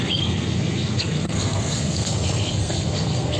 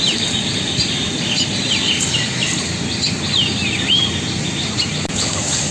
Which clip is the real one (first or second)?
second